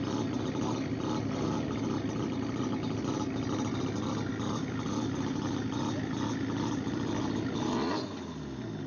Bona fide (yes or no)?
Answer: yes